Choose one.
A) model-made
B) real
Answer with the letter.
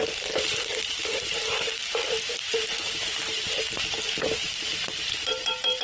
A